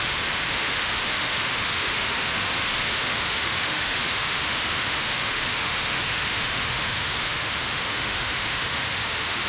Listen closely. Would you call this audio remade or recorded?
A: remade